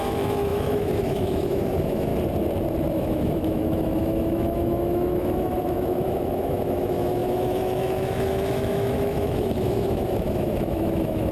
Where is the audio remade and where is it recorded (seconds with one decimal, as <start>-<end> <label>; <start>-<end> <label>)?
0.0-2.1 remade; 2.1-2.9 recorded; 2.9-11.3 remade